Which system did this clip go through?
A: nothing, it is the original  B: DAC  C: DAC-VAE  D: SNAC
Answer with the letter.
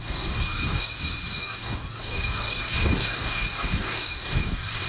B